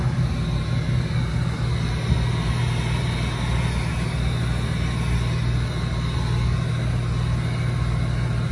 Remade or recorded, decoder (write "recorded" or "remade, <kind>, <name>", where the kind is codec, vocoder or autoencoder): recorded